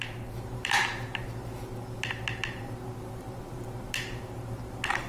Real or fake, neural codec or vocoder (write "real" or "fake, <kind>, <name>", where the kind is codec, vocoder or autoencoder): real